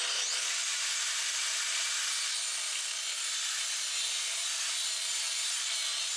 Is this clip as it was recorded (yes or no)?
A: yes